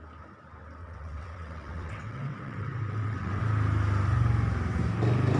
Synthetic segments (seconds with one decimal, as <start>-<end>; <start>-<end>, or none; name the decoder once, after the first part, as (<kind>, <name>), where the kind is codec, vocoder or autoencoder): 0.8-3.4 (vocoder, WaveNeXt)